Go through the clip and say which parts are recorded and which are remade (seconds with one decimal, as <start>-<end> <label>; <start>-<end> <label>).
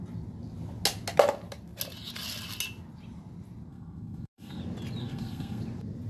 0.0-3.7 recorded; 3.7-4.6 remade; 4.6-5.0 recorded; 5.0-5.6 remade; 5.6-6.1 recorded